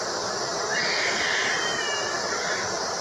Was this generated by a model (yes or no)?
yes